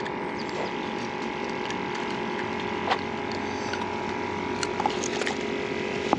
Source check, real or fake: real